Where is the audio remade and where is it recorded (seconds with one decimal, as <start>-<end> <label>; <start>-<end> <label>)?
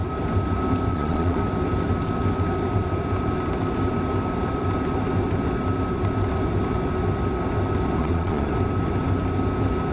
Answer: 0.0-0.9 recorded; 0.9-1.4 remade; 1.4-8.0 recorded; 8.0-8.5 remade; 8.5-9.9 recorded